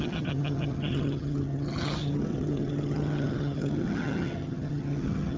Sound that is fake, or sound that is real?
fake